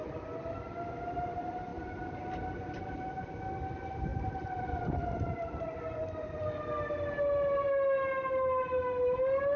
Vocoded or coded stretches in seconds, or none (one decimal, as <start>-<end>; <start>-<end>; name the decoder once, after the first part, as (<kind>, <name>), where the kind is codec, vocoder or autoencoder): 1.7-3.4 (vocoder, BigVGAN v2); 4.1-6.4